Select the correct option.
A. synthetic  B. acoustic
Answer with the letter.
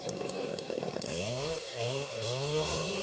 A